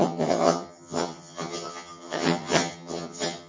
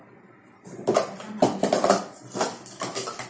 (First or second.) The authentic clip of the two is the second